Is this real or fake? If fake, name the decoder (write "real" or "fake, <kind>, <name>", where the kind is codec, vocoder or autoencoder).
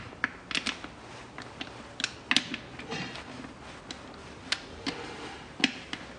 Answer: real